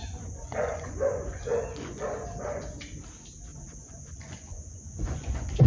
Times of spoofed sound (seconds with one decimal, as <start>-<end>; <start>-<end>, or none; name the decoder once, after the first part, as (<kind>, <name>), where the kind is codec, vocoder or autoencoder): 0.0-2.8 (vocoder, Vocos); 3.5-5.7